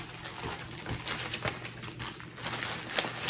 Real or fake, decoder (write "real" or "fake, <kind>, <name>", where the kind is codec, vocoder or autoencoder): real